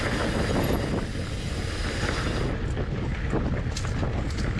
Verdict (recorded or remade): recorded